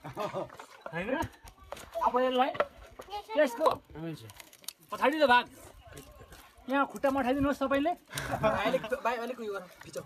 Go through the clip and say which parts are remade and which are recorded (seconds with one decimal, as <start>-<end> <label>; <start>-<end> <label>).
0.0-1.1 recorded; 1.1-4.7 remade; 4.7-10.1 recorded